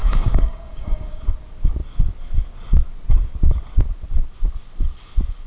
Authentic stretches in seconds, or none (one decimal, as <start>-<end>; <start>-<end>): 1.2-5.5